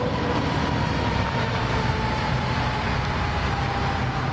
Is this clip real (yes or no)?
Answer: yes